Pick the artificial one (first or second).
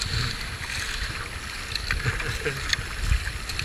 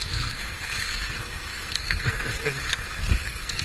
second